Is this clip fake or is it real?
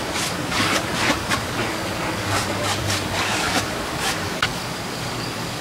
fake